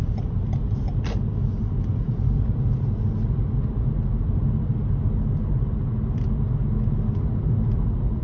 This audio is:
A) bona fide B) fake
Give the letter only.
A